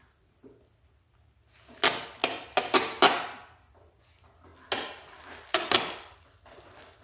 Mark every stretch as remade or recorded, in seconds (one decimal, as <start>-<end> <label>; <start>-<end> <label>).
0.0-7.0 recorded